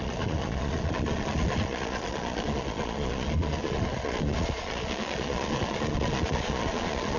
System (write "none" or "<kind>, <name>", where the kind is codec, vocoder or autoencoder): vocoder, Vocos